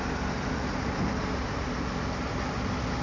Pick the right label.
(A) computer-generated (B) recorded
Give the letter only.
B